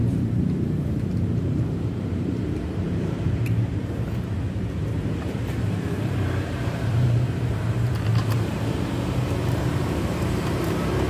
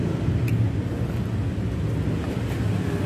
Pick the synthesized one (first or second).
first